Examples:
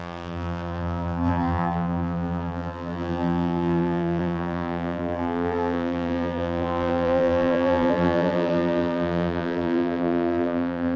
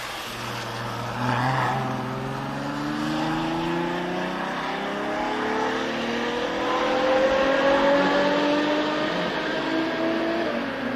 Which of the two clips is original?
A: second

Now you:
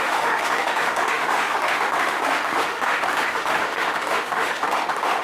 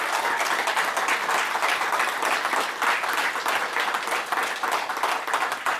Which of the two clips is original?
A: second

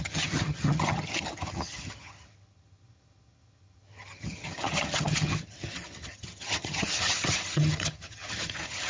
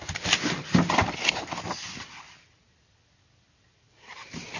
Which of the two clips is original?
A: second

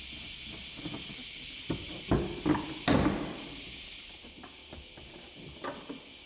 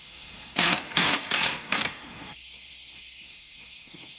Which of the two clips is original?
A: first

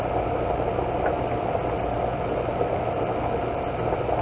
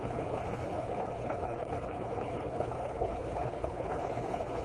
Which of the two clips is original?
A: first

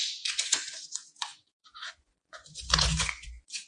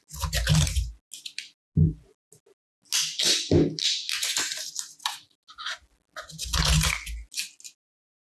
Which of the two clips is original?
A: second